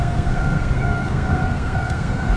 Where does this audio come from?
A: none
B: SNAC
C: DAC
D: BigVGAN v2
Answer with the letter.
B